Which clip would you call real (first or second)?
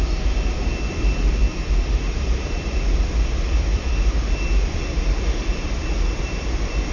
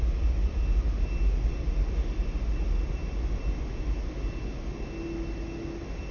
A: second